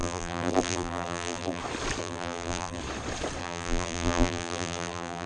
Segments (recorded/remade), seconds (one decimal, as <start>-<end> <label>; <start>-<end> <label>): 0.0-1.6 remade; 1.6-2.0 recorded; 2.0-2.8 remade; 2.8-3.4 recorded; 3.4-5.3 remade